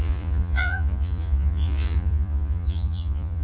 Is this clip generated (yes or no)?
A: yes